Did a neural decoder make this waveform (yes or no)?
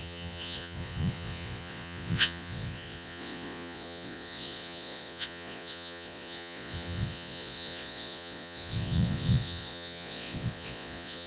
yes